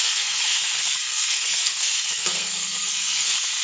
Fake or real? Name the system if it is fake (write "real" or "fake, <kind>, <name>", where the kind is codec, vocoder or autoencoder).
fake, codec, SNAC